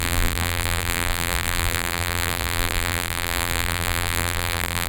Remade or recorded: remade